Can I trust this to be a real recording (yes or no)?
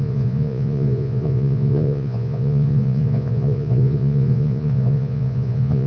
no